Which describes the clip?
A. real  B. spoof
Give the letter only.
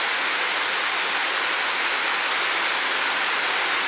A